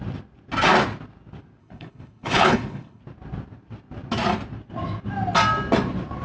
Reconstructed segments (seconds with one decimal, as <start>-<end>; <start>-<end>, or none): 1.6-3.0